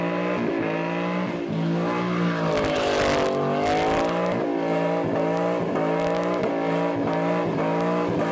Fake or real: real